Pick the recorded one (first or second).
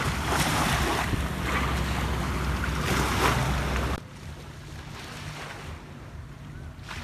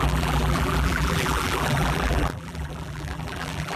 first